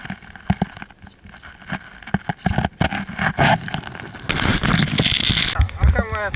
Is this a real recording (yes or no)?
yes